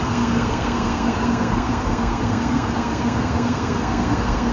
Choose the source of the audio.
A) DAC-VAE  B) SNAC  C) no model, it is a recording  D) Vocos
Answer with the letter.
B